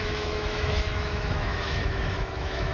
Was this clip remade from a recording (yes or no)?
yes